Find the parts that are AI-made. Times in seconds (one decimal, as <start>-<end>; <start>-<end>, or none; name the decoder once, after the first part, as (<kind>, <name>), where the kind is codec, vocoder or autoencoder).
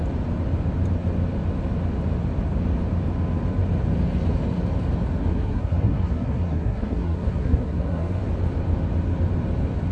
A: 5.2-8.2 (codec, SNAC)